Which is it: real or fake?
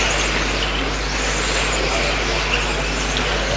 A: real